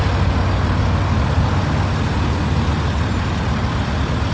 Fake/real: real